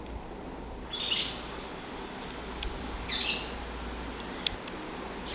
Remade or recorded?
recorded